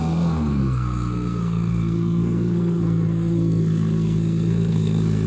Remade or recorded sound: remade